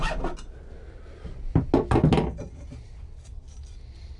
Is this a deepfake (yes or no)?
no